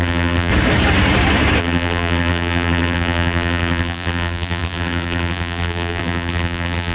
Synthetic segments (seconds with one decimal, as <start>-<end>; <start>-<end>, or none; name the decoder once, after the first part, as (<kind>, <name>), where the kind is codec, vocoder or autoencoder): 0.0-0.5 (vocoder, BigVGAN v2); 1.6-6.9